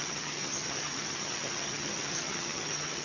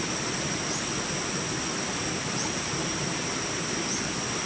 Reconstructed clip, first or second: first